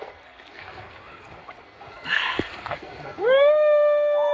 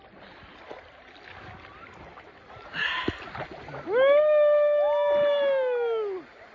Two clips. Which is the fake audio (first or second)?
first